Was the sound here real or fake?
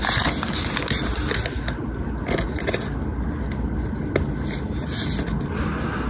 real